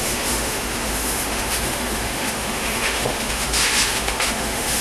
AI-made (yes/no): yes